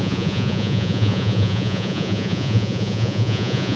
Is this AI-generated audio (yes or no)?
yes